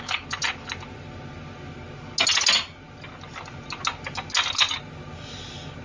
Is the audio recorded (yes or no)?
yes